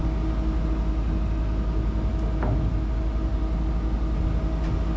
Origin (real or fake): real